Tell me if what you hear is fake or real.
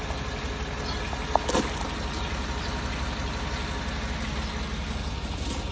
real